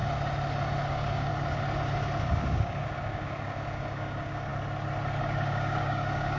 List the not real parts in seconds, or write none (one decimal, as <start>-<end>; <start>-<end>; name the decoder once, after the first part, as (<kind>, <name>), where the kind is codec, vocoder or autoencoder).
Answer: 0.9-1.3 (codec, DAC); 2.2-4.5; 5.2-6.4